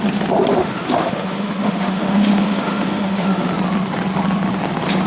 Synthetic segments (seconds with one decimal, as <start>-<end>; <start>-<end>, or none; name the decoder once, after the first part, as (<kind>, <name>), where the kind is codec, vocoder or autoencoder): 0.6-3.5 (autoencoder, DAC-VAE)